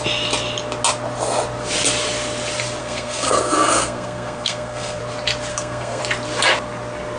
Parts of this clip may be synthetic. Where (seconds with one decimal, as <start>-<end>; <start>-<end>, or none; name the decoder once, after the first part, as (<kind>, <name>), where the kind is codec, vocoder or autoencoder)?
2.8-5.0 (codec, SNAC); 5.5-6.0